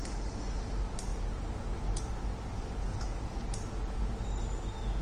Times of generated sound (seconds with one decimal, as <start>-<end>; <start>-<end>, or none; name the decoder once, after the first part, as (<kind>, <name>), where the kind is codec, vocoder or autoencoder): 1.1-2.0 (vocoder, Vocos); 2.9-4.0